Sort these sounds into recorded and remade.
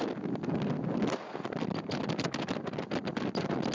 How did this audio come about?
recorded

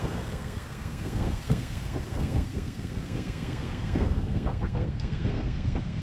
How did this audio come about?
remade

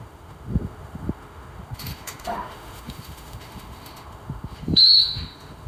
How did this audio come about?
remade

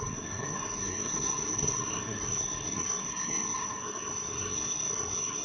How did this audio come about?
remade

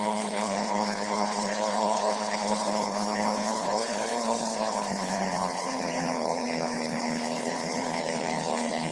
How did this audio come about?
remade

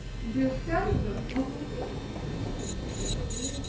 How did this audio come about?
recorded